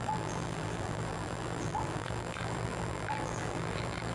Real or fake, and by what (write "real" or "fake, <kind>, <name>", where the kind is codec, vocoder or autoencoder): fake, vocoder, BigVGAN v2